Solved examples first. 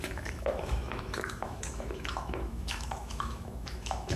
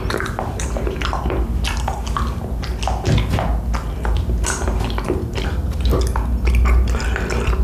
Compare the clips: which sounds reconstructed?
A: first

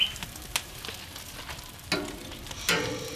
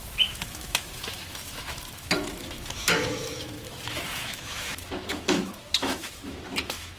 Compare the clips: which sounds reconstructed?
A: second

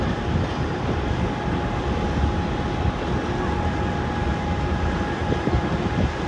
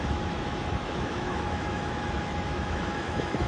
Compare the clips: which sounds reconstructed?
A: second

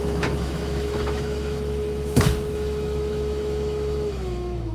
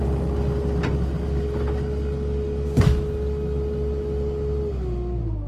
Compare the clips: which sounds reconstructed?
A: first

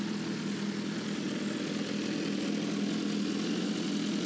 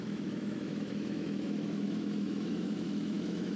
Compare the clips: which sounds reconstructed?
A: second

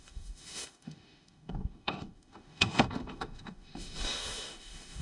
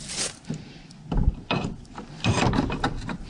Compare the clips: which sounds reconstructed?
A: first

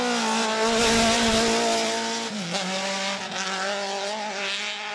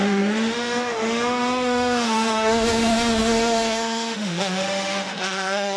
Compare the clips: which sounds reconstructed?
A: second